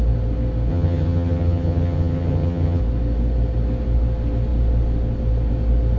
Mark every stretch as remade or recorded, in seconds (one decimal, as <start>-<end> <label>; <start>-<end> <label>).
0.0-0.7 recorded; 0.7-2.8 remade; 2.8-6.0 recorded